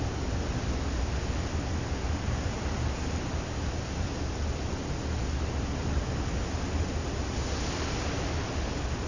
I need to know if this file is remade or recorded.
recorded